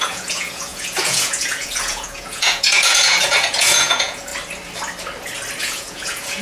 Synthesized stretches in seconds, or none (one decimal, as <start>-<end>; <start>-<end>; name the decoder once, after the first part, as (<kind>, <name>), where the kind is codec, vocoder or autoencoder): 0.0-4.3 (vocoder, Vocos); 5.6-6.4